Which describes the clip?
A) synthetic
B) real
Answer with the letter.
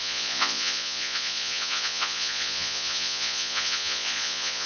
A